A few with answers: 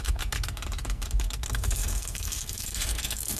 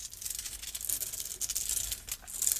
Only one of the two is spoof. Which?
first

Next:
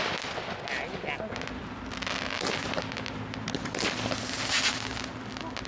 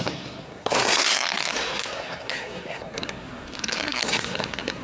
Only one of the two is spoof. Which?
second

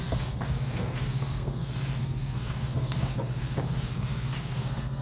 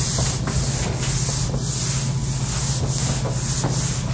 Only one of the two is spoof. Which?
first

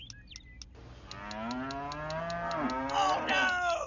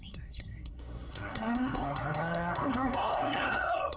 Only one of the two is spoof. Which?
second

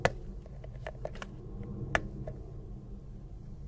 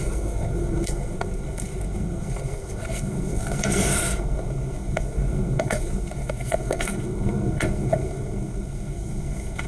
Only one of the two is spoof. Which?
second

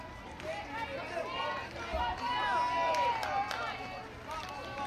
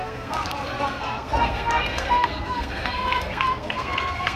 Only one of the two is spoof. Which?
second